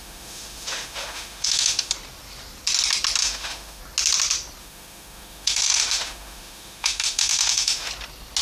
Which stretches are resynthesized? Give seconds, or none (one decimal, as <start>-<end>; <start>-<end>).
0.0-1.9; 3.2-3.8; 4.6-7.9